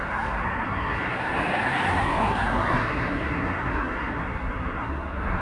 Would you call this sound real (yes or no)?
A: no